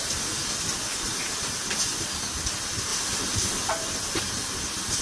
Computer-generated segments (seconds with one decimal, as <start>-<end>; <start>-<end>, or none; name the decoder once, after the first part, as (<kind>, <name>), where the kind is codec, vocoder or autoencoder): 2.9-3.7 (vocoder, BigVGAN v2)